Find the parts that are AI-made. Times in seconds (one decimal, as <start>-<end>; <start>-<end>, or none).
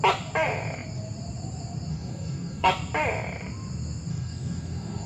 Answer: 1.9-2.7; 4.1-5.1